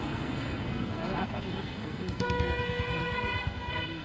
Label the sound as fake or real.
fake